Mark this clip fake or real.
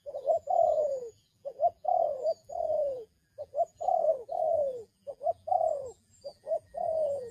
fake